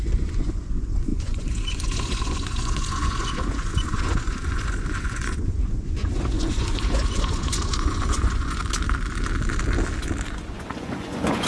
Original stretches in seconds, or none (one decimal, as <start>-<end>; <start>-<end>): 8.6-10.3